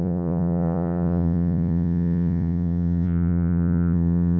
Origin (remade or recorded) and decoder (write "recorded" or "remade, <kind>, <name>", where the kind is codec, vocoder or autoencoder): remade, vocoder, Vocos